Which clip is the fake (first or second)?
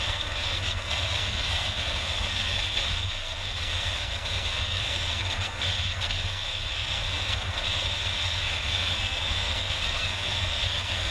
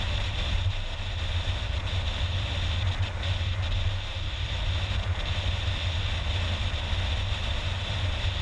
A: first